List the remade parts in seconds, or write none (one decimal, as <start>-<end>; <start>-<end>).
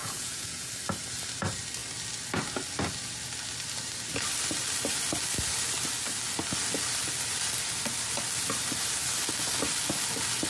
0.0-0.7